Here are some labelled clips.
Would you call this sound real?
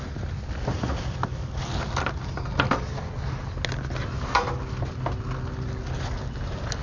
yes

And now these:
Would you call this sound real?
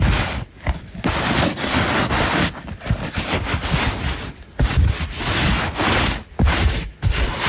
yes